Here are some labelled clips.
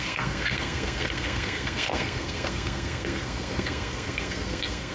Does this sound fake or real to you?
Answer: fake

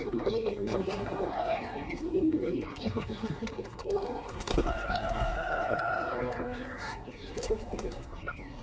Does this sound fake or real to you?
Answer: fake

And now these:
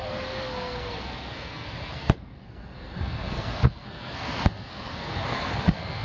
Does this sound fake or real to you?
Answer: fake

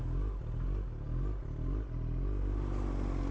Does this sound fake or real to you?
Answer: real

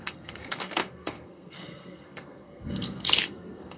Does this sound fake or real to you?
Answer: fake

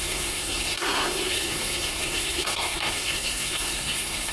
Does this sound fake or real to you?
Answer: fake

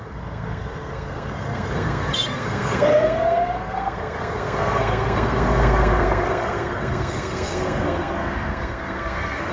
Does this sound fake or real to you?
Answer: fake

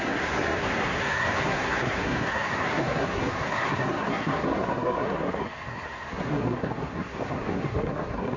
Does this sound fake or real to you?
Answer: fake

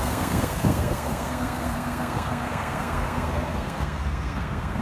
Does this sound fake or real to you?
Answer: fake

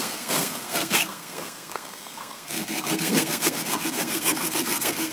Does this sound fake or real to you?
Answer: fake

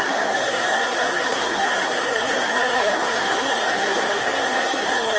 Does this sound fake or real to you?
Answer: fake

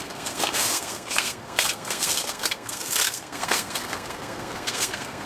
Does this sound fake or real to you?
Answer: fake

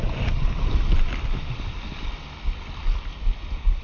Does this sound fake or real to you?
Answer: real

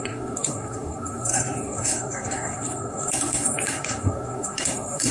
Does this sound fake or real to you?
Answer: fake